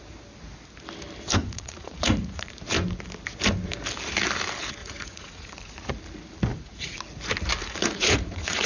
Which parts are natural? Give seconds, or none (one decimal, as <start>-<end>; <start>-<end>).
0.0-1.4; 2.5-4.8; 5.9-6.5; 7.0-7.6